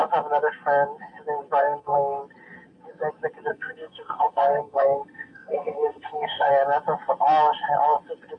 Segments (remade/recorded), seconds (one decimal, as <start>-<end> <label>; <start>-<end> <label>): 0.0-1.6 recorded; 1.6-2.2 remade; 2.2-3.5 recorded; 3.5-6.5 remade; 6.5-8.4 recorded